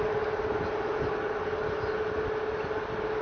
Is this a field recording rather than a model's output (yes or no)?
yes